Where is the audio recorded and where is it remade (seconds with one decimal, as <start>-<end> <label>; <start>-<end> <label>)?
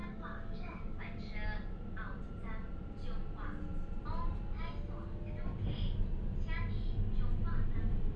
0.0-1.0 remade; 1.0-8.2 recorded